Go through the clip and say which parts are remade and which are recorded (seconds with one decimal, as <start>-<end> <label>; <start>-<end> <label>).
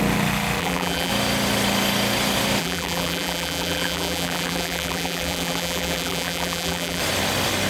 0.0-0.6 recorded; 0.6-1.1 remade; 1.1-2.6 recorded; 2.6-7.0 remade; 7.0-7.7 recorded